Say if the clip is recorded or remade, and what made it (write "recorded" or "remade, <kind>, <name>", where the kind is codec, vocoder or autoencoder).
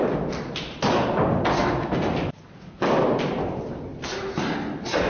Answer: recorded